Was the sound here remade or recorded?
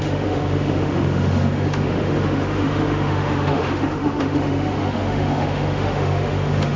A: remade